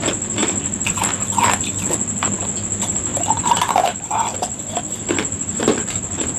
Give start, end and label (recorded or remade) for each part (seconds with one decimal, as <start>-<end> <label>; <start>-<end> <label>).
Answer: 0.0-3.1 recorded; 3.1-6.4 remade